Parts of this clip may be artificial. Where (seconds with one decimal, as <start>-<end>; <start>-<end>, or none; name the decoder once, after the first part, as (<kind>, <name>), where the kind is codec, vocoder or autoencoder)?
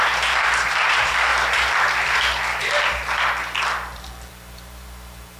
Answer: 0.0-1.3 (vocoder, BigVGAN v2); 4.3-5.4